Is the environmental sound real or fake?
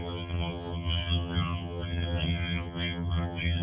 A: fake